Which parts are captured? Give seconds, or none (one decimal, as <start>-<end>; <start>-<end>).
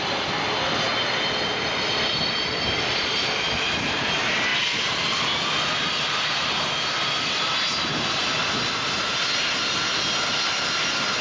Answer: 0.0-11.2